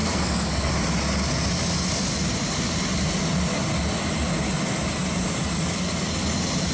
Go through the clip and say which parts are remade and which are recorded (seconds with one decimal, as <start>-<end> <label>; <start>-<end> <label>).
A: 0.0-0.7 remade; 0.7-6.7 recorded